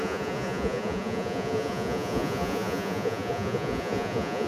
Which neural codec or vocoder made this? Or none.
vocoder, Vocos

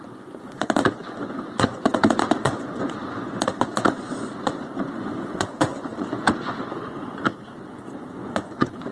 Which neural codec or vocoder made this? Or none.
vocoder, Vocos